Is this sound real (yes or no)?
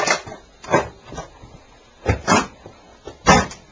yes